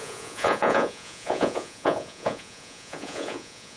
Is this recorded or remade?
remade